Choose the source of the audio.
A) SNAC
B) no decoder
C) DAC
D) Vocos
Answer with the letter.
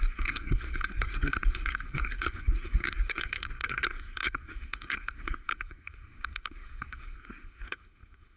A